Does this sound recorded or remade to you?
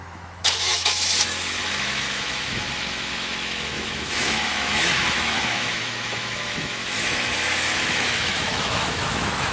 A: remade